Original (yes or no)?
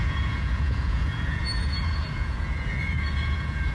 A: no